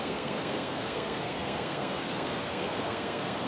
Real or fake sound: fake